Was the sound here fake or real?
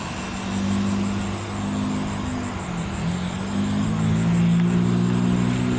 real